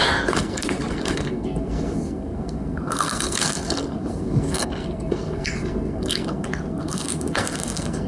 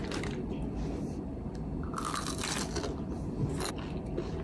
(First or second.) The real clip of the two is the second